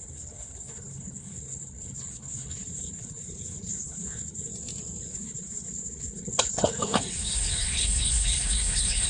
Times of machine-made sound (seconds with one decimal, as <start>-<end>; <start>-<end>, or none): 0.0-4.5; 5.1-9.1